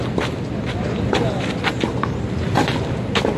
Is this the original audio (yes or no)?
yes